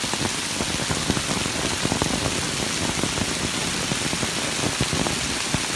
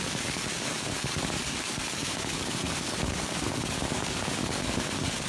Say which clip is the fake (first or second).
second